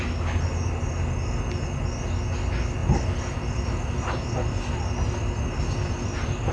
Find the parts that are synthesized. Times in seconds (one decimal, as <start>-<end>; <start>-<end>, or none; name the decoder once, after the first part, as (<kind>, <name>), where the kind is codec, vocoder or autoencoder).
none